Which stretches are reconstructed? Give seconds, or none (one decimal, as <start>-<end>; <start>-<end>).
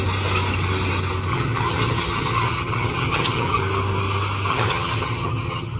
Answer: 1.3-3.6; 4.5-5.8